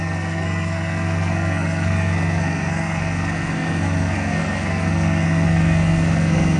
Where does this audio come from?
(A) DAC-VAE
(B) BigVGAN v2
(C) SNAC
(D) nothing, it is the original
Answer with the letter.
C